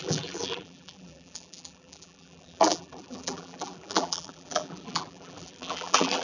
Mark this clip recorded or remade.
remade